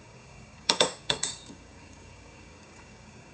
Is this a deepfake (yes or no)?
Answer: yes